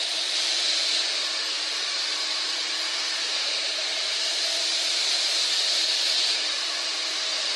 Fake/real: fake